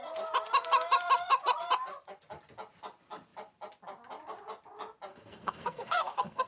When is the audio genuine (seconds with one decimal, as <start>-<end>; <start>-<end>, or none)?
0.0-5.1